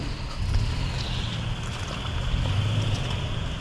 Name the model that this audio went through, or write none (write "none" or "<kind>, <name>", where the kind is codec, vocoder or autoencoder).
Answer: none